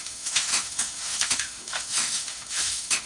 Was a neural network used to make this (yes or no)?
yes